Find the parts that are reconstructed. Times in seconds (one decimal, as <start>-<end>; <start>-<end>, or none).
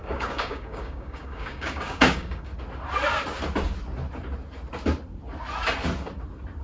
0.0-2.5